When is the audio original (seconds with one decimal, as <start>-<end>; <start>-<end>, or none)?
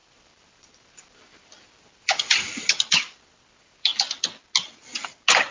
3.9-5.5